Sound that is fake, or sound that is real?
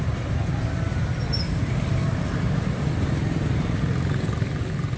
real